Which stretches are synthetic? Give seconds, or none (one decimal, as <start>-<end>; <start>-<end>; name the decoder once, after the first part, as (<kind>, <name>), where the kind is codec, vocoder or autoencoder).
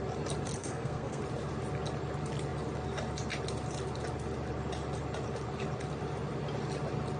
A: 0.6-1.2 (codec, SNAC)